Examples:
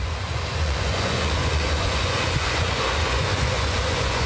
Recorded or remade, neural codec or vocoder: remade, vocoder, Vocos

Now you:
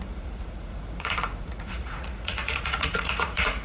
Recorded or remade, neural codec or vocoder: remade, vocoder, Vocos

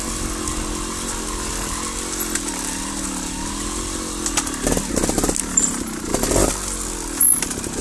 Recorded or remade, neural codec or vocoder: recorded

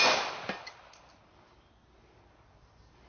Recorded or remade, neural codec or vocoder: recorded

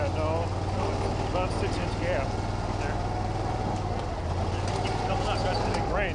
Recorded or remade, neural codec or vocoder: recorded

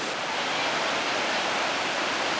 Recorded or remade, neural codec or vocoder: recorded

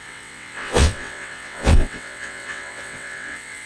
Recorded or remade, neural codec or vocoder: remade, vocoder, WaveNeXt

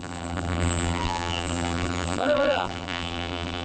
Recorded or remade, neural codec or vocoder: remade, vocoder, BigVGAN v2